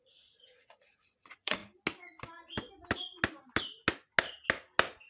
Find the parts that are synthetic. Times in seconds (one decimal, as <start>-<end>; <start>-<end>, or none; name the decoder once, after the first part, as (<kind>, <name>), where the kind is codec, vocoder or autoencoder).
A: 0.0-1.6 (vocoder, Vocos)